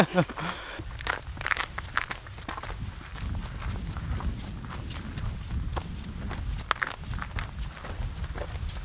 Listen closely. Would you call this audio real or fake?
real